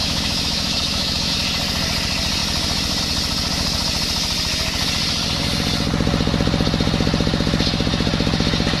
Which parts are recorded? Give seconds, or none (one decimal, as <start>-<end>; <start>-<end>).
1.3-8.8